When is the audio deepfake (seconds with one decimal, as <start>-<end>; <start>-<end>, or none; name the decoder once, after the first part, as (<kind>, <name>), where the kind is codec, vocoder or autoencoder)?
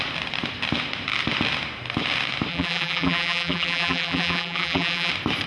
2.5-5.1 (vocoder, BigVGAN v2)